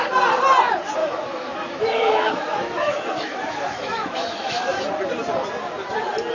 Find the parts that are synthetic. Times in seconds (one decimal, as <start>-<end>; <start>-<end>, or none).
1.0-4.8